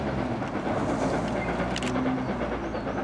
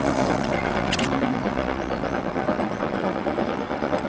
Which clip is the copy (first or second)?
second